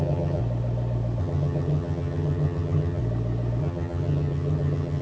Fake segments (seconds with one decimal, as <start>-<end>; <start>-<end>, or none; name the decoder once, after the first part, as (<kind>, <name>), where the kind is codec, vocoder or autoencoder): 0.0-0.4 (vocoder, HiFi-GAN); 1.2-3.0; 3.6-5.0